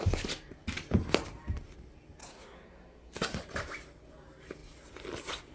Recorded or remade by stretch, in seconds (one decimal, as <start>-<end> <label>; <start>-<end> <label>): 0.0-2.2 recorded; 2.2-3.4 remade; 3.4-5.5 recorded